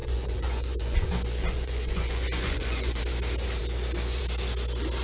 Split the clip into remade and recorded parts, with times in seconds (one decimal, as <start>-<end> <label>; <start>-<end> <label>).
0.0-1.1 remade; 1.1-1.5 recorded; 1.5-3.0 remade; 3.0-5.0 recorded